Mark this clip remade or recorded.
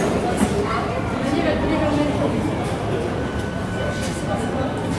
recorded